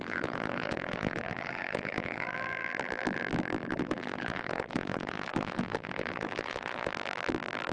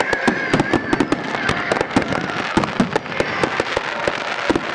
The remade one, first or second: first